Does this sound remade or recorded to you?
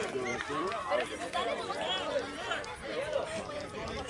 remade